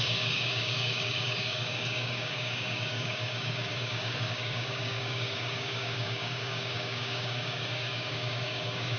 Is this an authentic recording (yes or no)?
no